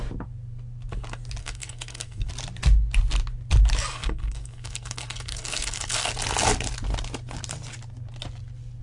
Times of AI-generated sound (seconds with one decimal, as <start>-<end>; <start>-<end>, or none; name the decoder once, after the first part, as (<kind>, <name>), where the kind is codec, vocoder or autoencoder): 1.4-2.3 (codec, SNAC); 3.9-6.1